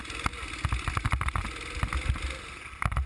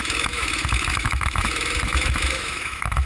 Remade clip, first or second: second